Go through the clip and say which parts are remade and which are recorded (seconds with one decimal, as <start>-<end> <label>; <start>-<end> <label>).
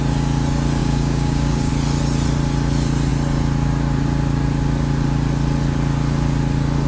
0.0-0.8 recorded; 0.8-1.7 remade; 1.7-6.9 recorded